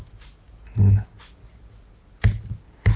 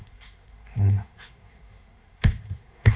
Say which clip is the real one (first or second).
first